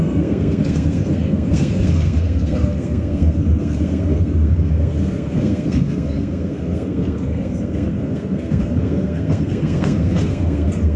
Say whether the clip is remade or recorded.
remade